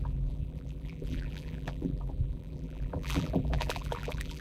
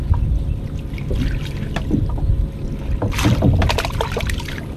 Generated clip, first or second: first